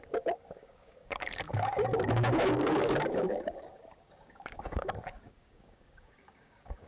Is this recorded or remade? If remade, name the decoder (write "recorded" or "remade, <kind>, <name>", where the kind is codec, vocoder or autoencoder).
remade, codec, DAC